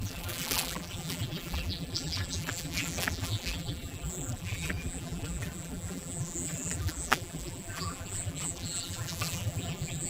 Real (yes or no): no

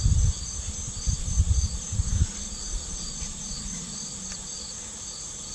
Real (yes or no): yes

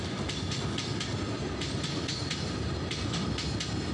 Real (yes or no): yes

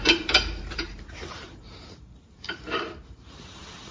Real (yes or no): no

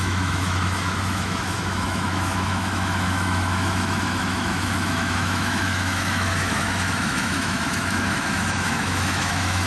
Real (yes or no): no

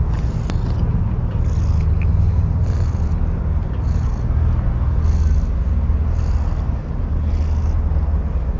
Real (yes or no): yes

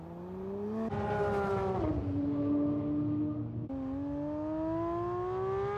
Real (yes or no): yes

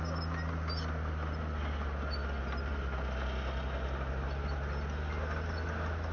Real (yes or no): yes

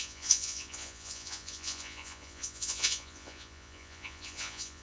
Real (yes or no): no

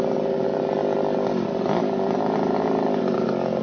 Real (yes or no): yes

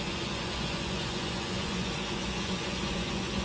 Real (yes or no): no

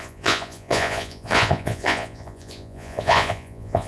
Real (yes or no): no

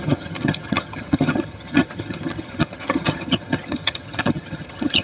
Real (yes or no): no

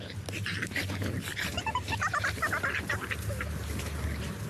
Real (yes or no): yes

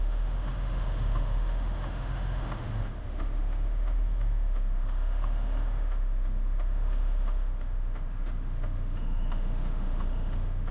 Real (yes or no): no